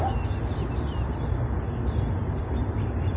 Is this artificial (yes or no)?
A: no